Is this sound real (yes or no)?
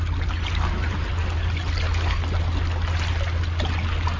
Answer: yes